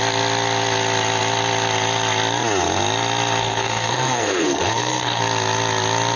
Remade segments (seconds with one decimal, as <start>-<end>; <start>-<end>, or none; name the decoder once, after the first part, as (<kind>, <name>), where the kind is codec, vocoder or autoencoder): 3.4-5.2 (codec, SNAC)